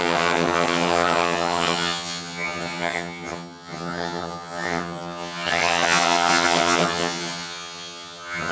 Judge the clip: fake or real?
fake